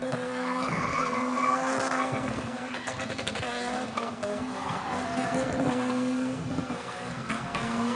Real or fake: fake